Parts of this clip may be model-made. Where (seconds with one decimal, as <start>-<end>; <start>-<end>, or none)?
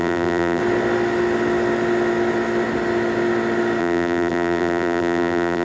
0.0-0.6; 3.8-5.6